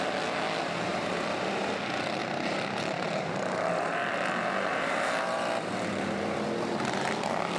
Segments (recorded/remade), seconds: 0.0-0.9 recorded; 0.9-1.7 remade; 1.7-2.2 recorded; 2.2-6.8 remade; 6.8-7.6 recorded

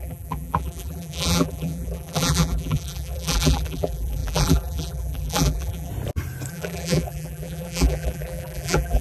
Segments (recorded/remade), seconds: 0.0-5.9 remade; 5.9-6.5 recorded; 6.5-9.0 remade

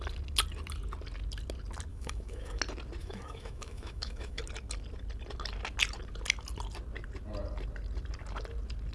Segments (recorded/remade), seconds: 0.0-1.9 recorded; 1.9-2.6 remade; 2.6-3.0 recorded; 3.0-4.4 remade; 4.4-8.9 recorded

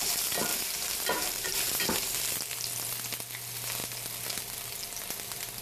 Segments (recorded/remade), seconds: 0.0-0.5 recorded; 0.5-2.2 remade; 2.2-5.6 recorded

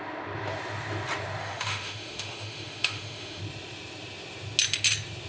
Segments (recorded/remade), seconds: 0.0-1.4 recorded; 1.4-3.4 remade; 3.4-5.3 recorded

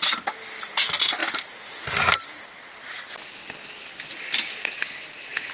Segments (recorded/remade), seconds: 0.0-5.5 recorded

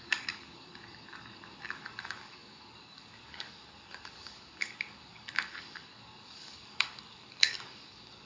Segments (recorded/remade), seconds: 0.0-8.3 remade

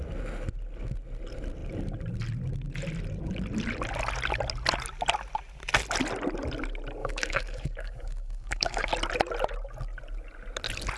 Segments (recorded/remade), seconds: 0.0-7.0 recorded; 7.0-8.9 remade; 8.9-11.0 recorded